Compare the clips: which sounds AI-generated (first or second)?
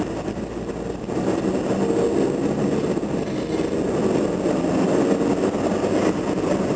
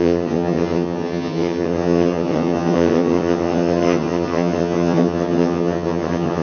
second